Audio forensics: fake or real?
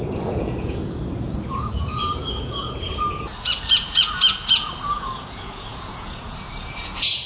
fake